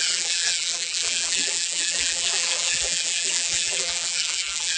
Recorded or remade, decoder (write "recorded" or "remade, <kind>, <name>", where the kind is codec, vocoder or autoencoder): remade, vocoder, BigVGAN v2